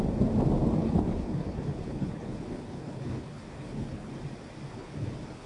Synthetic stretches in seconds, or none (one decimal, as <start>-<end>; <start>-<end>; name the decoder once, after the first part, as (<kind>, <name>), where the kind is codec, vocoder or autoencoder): 0.8-4.1 (codec, HILCodec); 4.7-5.5